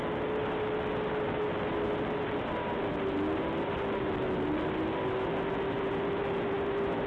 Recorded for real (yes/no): yes